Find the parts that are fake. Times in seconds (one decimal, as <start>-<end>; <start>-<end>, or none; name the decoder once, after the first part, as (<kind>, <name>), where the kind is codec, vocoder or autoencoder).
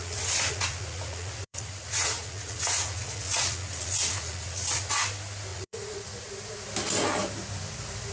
0.0-4.9 (vocoder, Vocos); 5.5-6.3